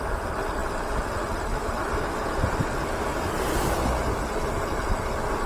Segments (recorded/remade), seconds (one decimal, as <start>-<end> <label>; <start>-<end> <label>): 0.0-4.7 remade; 4.7-5.5 recorded